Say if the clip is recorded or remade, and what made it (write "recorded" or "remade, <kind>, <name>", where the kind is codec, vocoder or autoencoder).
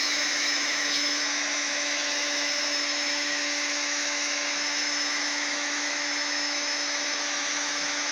remade, autoencoder, DAC-VAE